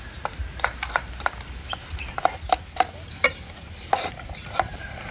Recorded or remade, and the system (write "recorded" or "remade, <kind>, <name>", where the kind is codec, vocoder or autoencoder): remade, vocoder, BigVGAN v2